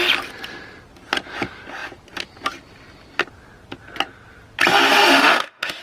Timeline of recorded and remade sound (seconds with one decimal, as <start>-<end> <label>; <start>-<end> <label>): 0.0-4.9 recorded; 4.9-5.8 remade